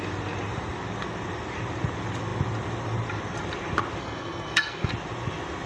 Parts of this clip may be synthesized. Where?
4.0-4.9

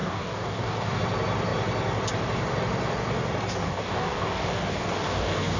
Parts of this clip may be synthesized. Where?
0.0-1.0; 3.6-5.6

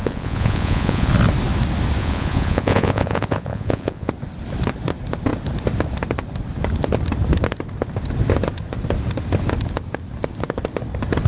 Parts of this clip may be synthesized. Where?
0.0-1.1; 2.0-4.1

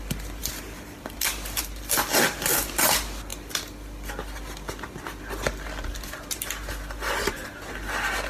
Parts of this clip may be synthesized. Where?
0.4-1.6